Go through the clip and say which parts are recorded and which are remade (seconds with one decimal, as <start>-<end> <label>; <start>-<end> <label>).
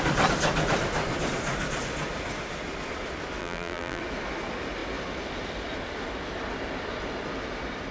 0.0-3.4 recorded; 3.4-4.0 remade; 4.0-7.9 recorded